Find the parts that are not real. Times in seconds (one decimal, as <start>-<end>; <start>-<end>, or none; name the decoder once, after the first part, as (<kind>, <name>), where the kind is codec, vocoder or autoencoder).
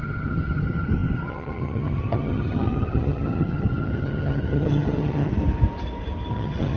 0.0-5.3 (vocoder, HiFi-GAN); 6.3-6.8